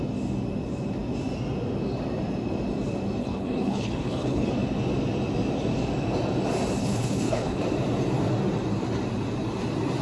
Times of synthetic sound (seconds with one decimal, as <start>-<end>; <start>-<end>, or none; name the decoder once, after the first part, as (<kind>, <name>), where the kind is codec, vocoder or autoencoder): 3.2-4.5 (codec, HILCodec); 6.8-7.6